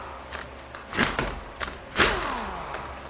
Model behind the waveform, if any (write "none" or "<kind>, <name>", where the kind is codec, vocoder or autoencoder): none